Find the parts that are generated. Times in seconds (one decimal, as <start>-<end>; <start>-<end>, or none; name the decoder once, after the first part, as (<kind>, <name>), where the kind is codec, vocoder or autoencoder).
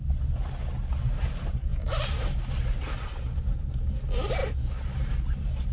none